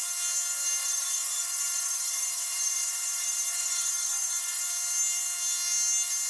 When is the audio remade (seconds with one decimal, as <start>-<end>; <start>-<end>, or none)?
0.8-4.6